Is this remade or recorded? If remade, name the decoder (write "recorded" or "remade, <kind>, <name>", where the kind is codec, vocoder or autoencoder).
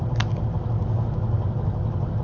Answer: recorded